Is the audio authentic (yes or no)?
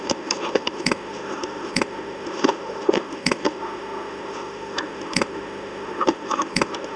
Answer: no